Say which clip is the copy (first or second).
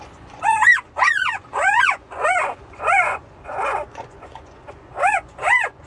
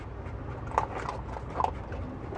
first